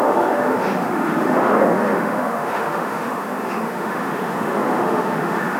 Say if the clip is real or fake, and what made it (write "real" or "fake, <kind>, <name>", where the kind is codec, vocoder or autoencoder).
fake, autoencoder, DAC-VAE